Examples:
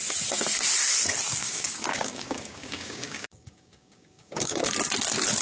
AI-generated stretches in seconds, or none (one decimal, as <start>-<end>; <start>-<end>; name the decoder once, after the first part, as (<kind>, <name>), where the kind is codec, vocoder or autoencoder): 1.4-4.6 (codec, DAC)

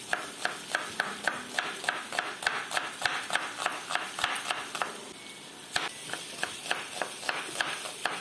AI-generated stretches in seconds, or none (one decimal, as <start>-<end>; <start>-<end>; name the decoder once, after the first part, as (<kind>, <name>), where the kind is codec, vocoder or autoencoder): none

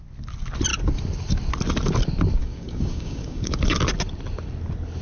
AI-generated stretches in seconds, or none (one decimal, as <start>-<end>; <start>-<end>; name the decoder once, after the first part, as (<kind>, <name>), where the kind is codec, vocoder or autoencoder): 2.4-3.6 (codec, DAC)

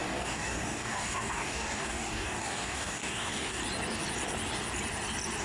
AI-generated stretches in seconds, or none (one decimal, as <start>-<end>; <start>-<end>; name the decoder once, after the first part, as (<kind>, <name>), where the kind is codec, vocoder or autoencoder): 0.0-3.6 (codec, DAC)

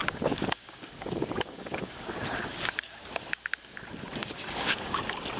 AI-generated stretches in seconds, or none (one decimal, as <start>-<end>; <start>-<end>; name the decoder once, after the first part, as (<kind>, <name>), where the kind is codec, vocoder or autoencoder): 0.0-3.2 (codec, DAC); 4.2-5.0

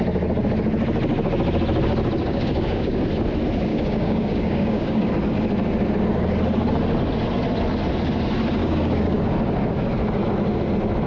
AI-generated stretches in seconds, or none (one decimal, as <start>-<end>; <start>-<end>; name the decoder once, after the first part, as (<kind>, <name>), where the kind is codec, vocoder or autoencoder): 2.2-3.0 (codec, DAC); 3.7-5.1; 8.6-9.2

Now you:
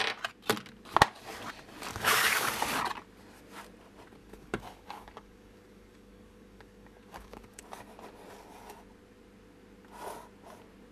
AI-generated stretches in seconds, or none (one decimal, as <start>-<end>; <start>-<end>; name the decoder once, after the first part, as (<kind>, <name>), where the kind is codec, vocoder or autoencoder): 1.9-2.5 (codec, DAC); 4.2-7.6